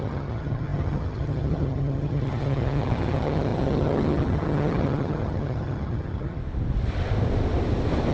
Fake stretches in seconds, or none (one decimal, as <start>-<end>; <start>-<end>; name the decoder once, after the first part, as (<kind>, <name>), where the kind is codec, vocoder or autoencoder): 0.0-6.4 (vocoder, HiFi-GAN)